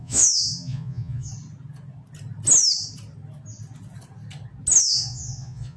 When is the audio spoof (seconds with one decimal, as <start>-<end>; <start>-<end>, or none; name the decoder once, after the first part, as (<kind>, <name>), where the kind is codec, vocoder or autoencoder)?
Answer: 0.0-1.3 (vocoder, Vocos); 4.8-5.8